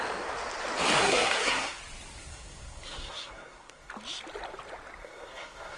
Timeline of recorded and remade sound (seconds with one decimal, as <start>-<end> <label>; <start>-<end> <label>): 0.0-1.0 recorded; 1.0-1.8 remade; 1.8-2.2 recorded; 2.2-3.9 remade; 3.9-5.0 recorded; 5.0-5.8 remade